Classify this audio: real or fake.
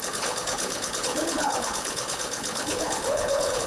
fake